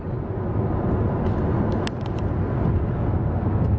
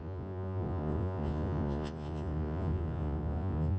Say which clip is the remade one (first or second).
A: second